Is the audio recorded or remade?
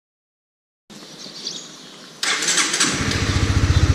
recorded